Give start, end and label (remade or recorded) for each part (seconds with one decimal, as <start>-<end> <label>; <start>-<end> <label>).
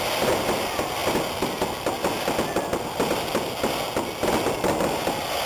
0.0-5.5 recorded